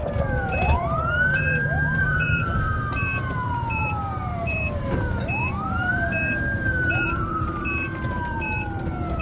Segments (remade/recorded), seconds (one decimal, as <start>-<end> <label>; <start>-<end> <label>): 0.0-9.2 remade